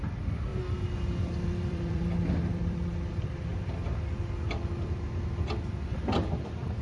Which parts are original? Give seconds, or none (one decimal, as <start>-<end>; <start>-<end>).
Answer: 0.5-1.2; 3.5-6.2